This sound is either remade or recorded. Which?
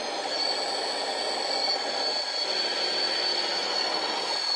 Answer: recorded